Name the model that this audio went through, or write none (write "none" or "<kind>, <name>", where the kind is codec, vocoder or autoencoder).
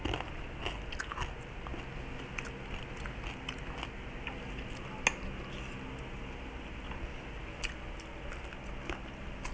none